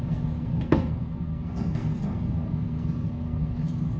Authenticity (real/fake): fake